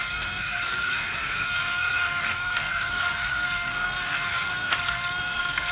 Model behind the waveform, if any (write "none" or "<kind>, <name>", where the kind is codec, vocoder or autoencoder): codec, SNAC